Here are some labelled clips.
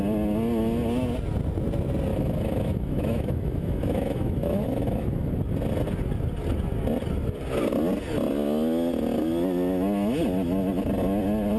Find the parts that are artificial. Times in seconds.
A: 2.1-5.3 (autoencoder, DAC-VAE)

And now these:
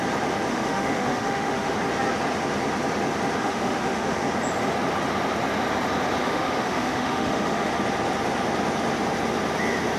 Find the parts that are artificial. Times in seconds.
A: 0.5-1.7 (autoencoder, DAC-VAE); 3.4-4.2; 6.2-7.7

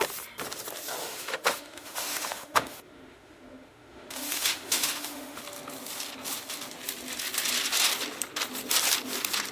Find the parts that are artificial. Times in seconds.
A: 1.0-5.4 (autoencoder, DAC-VAE)